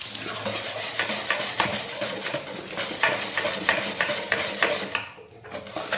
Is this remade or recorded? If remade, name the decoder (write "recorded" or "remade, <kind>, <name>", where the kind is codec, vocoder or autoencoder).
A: recorded